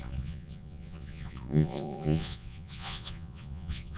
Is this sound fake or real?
fake